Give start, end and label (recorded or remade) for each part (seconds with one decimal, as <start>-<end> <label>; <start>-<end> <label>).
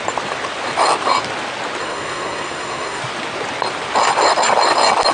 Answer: 0.0-1.8 recorded; 1.8-3.0 remade; 3.0-5.1 recorded